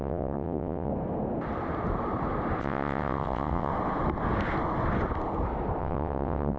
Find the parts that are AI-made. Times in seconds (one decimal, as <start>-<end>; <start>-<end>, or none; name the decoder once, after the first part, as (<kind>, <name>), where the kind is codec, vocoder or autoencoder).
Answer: 0.0-0.9 (vocoder, WaveNeXt); 2.6-3.7; 5.8-6.6